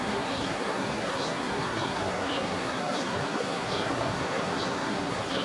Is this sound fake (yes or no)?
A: yes